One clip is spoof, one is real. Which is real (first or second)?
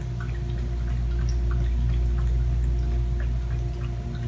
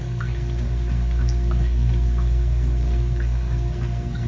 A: first